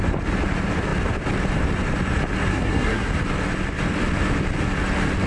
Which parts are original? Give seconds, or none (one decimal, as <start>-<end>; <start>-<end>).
0.0-2.5; 3.1-5.3